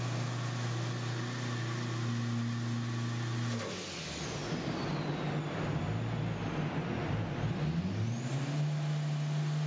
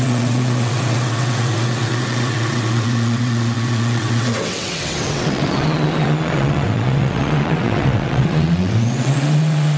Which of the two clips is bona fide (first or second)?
first